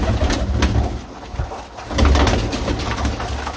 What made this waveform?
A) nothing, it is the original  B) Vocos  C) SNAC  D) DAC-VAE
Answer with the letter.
A